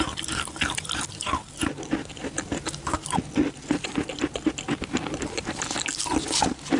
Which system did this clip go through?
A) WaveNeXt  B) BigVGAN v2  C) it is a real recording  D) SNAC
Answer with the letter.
C